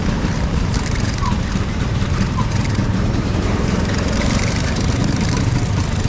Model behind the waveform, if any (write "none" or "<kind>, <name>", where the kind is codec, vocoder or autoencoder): vocoder, BigVGAN v2